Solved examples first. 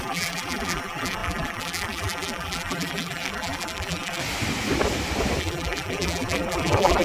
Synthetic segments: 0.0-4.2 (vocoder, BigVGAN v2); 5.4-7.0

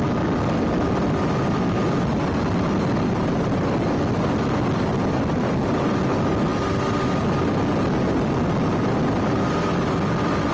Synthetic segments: none